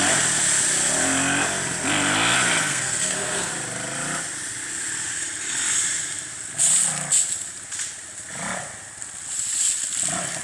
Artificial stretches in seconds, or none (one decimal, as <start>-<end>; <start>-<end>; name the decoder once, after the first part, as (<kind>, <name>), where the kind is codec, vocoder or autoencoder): 2.6-3.5 (codec, SNAC)